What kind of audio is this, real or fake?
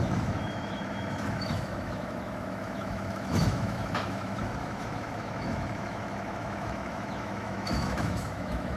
fake